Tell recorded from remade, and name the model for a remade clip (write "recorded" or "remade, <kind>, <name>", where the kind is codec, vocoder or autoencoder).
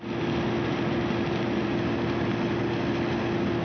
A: recorded